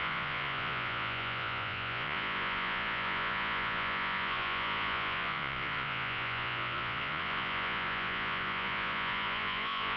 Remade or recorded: remade